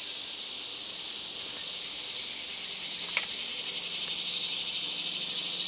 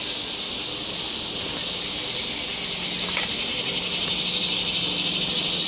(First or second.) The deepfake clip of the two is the first